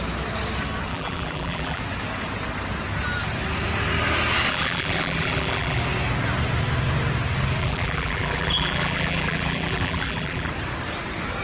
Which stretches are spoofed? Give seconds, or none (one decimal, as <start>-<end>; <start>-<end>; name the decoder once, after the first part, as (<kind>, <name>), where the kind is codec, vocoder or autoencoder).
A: 0.9-1.8 (vocoder, BigVGAN v2); 4.5-5.8; 7.6-10.5